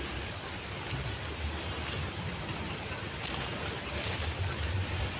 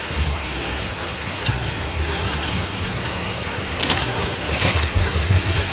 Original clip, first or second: first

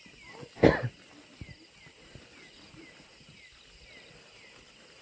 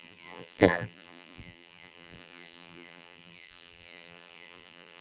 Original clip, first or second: first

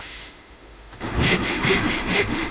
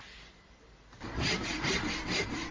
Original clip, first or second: second